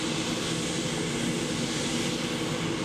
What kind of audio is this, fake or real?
real